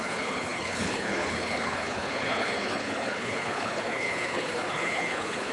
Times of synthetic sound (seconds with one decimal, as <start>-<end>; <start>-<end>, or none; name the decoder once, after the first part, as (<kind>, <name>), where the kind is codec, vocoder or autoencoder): 0.0-5.5 (codec, HILCodec)